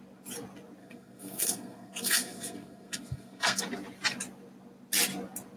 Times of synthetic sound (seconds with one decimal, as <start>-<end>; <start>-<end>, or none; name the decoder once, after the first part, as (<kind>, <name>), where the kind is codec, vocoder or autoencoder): 0.8-3.6 (codec, SNAC)